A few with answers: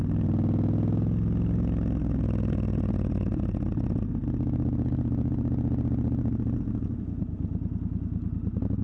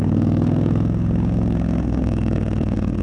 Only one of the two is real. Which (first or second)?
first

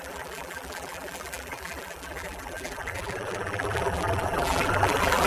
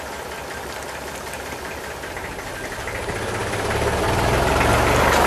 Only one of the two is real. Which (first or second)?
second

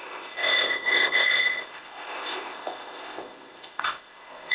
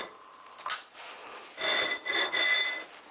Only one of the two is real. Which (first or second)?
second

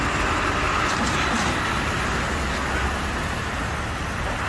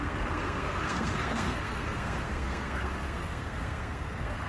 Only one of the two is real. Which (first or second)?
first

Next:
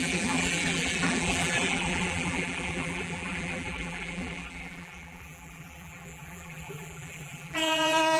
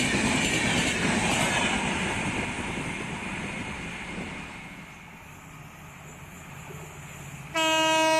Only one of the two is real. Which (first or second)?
second